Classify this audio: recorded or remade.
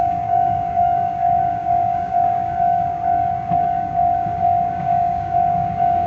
remade